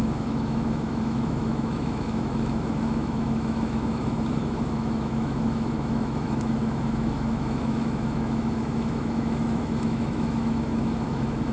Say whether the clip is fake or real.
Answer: fake